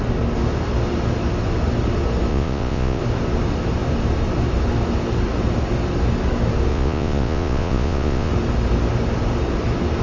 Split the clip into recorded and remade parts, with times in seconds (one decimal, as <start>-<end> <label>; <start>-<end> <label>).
0.0-2.3 recorded; 2.3-3.0 remade; 3.0-6.7 recorded; 6.7-8.3 remade; 8.3-10.0 recorded